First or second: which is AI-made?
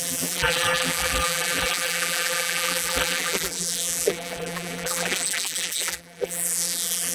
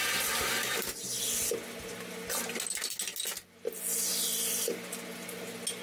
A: first